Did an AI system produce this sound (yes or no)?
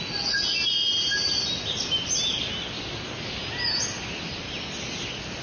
no